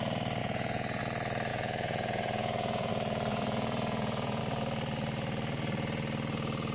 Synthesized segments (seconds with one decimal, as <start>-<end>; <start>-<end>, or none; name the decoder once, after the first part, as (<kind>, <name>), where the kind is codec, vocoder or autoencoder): 0.4-1.0 (vocoder, Vocos); 1.5-2.9; 3.3-4.4